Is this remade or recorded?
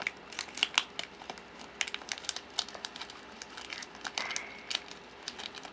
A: recorded